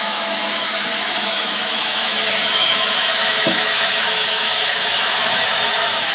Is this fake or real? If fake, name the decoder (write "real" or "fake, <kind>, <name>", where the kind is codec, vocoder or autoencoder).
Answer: fake, autoencoder, DAC-VAE